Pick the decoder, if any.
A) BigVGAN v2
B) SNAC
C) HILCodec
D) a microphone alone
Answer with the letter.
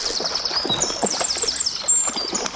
D